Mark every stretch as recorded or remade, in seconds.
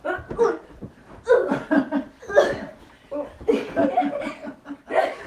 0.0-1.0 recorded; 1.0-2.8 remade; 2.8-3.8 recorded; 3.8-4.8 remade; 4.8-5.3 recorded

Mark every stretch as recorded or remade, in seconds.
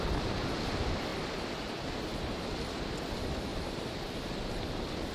0.0-3.5 recorded; 3.5-4.0 remade; 4.0-5.1 recorded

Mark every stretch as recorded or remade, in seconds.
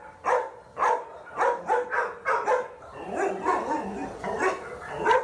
0.0-0.8 recorded; 0.8-3.3 remade; 3.3-5.2 recorded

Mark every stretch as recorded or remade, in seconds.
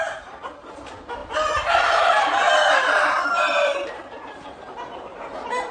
0.0-1.2 recorded; 1.2-4.6 remade; 4.6-5.7 recorded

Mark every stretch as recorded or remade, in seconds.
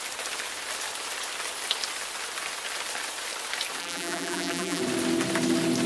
0.0-3.8 recorded; 3.8-4.8 remade; 4.8-5.9 recorded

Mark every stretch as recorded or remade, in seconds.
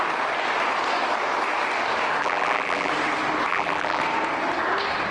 0.0-2.2 recorded; 2.2-2.9 remade; 2.9-3.5 recorded; 3.5-4.0 remade; 4.0-5.1 recorded